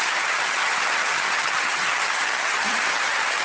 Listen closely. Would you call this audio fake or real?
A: fake